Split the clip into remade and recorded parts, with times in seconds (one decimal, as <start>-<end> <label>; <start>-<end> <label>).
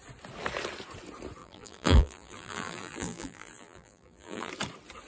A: 0.0-1.4 recorded; 1.4-4.5 remade; 4.5-5.1 recorded